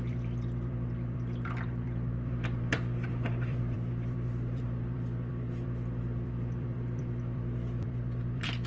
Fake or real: fake